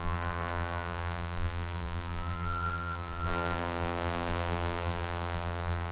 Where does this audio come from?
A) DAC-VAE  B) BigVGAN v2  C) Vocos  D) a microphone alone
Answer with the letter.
B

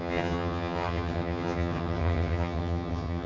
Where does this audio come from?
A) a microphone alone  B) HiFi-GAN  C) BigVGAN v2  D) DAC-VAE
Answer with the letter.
B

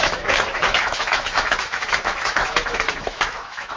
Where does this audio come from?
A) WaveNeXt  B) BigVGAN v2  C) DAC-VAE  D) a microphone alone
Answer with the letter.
C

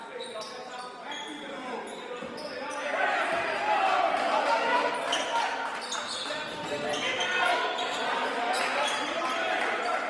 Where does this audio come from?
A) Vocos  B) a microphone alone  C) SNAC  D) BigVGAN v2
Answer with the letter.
B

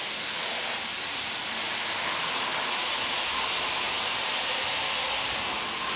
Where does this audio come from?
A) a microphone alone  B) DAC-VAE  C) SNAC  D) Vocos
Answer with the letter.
A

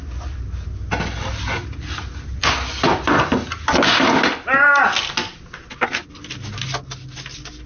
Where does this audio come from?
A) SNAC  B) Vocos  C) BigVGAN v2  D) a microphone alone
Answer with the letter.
D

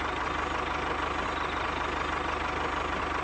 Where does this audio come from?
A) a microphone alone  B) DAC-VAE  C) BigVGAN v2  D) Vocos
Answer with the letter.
A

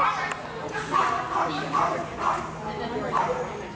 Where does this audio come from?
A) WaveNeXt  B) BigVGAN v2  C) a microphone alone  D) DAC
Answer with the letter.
C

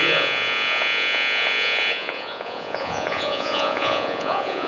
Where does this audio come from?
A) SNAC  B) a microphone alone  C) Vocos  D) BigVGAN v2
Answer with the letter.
C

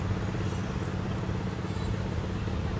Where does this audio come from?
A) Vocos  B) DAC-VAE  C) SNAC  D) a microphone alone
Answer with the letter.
D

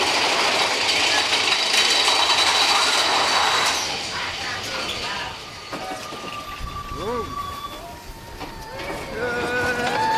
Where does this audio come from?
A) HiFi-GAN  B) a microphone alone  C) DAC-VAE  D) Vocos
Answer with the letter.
B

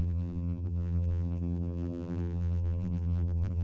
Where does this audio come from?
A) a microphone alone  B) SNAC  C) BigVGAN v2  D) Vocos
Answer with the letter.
C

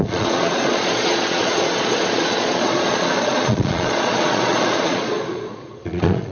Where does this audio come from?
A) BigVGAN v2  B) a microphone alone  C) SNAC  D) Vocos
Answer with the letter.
D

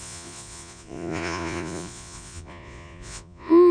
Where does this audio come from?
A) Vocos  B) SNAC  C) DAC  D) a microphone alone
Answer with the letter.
A